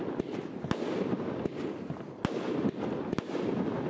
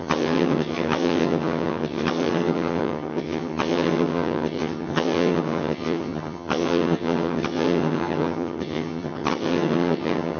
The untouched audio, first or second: first